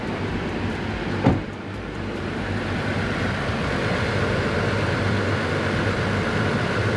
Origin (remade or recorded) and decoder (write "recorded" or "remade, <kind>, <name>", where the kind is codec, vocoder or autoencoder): remade, vocoder, BigVGAN v2